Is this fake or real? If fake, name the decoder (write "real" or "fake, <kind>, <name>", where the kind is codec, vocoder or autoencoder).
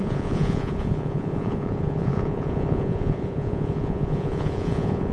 fake, vocoder, Vocos